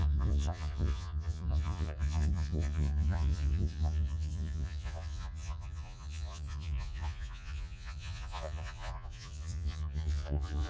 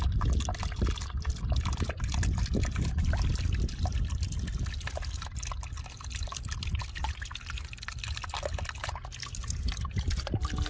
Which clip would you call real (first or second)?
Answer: second